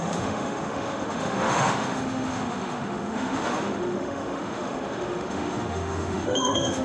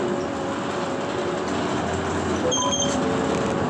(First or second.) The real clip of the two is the second